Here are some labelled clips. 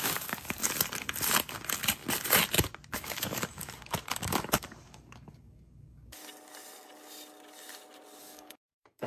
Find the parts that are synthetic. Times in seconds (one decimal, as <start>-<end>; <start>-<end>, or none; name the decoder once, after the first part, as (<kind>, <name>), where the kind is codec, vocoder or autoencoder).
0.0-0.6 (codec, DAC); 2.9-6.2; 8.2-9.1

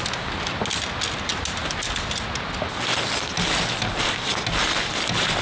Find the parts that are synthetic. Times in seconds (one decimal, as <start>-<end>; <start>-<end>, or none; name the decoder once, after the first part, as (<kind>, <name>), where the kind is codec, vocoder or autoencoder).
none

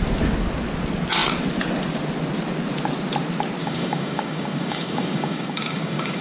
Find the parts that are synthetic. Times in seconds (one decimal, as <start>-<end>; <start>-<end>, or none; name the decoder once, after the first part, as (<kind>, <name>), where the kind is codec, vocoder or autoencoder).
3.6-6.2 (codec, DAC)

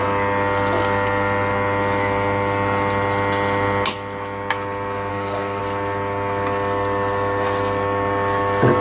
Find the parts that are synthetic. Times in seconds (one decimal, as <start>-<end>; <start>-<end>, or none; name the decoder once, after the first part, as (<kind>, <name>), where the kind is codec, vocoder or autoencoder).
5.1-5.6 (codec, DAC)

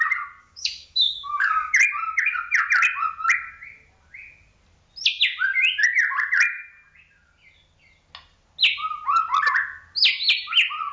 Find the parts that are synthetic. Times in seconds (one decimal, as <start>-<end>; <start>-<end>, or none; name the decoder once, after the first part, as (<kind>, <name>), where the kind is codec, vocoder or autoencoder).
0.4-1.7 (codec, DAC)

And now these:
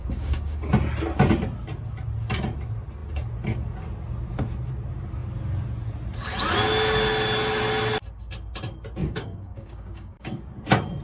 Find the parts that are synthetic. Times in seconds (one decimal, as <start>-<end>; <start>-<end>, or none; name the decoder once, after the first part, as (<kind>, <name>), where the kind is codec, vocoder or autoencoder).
0.0-0.7 (codec, DAC); 9.0-10.4

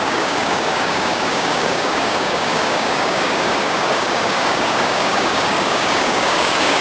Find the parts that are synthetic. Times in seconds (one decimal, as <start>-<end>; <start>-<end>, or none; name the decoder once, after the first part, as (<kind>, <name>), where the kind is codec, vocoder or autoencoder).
0.0-6.8 (codec, DAC)